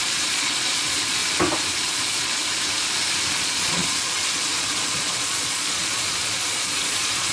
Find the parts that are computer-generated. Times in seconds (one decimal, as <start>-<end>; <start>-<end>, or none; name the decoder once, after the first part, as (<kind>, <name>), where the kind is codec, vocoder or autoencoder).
0.0-1.2 (vocoder, Vocos); 1.9-2.4; 3.3-7.3